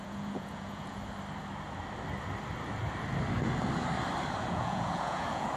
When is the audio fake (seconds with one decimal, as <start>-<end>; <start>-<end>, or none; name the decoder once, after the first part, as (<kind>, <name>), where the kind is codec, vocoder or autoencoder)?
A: 0.0-1.0 (vocoder, Vocos); 4.4-5.6